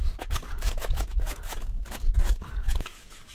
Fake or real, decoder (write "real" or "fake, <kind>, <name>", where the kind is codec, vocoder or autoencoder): fake, codec, DAC